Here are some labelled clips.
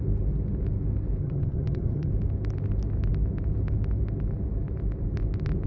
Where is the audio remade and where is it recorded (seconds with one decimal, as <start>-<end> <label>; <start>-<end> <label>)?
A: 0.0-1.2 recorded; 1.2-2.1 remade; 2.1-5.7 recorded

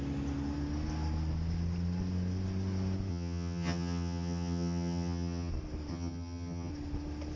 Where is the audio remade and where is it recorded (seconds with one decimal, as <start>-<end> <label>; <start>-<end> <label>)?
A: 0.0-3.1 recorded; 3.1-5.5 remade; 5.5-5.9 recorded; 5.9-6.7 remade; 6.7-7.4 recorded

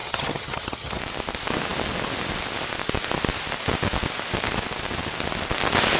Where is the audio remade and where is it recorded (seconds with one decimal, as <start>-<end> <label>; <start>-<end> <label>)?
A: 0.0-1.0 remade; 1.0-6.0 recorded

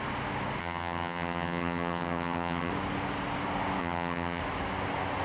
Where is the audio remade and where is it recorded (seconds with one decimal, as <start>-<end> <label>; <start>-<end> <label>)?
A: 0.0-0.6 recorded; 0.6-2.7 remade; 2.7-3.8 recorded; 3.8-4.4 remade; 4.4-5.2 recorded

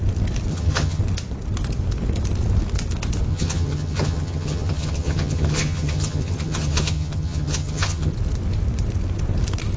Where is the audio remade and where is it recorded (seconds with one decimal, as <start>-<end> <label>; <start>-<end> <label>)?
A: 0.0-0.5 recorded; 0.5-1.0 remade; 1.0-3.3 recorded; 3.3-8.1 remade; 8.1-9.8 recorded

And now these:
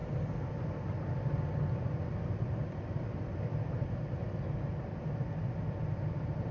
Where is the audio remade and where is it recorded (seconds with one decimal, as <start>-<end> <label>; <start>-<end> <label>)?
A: 0.0-6.5 recorded

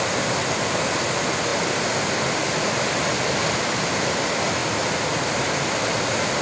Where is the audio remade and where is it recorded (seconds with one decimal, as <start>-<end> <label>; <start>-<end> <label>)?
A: 0.0-6.4 recorded